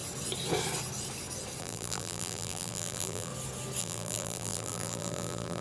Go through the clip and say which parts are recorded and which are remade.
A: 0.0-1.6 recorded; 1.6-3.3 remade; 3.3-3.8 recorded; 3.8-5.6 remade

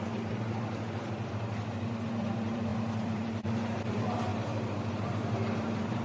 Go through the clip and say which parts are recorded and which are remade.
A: 0.0-4.3 remade; 4.3-4.9 recorded; 4.9-6.0 remade

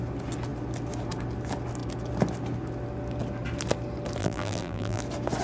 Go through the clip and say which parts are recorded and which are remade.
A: 0.0-4.2 recorded; 4.2-5.0 remade; 5.0-5.4 recorded

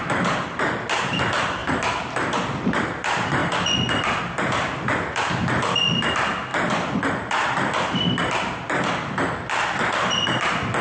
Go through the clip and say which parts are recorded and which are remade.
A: 0.0-3.4 remade; 3.4-4.2 recorded; 4.2-10.8 remade

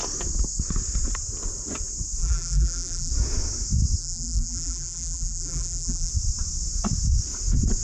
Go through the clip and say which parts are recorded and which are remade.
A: 0.0-2.2 recorded; 2.2-3.1 remade; 3.1-4.0 recorded; 4.0-6.1 remade; 6.1-7.8 recorded

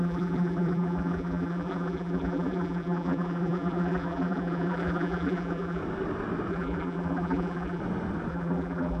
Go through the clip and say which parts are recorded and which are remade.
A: 0.0-5.8 remade; 5.8-6.5 recorded; 6.5-7.8 remade; 7.8-8.3 recorded; 8.3-9.0 remade